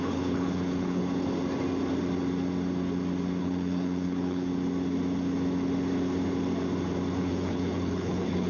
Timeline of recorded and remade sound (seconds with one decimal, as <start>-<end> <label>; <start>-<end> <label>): 0.0-1.0 remade; 1.0-3.4 recorded; 3.4-4.5 remade; 4.5-7.2 recorded; 7.2-8.5 remade